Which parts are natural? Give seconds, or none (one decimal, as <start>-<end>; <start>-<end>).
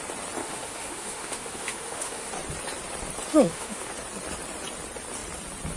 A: 0.0-0.4; 2.3-3.3; 3.9-5.8